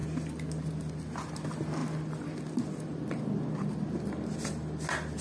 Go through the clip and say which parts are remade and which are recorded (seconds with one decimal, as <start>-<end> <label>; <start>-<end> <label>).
0.0-5.2 recorded